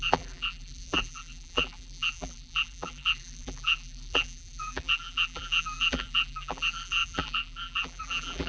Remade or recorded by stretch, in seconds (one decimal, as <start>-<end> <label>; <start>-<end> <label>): 0.0-8.5 remade